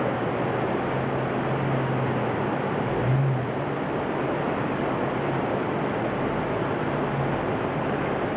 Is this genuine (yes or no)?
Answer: yes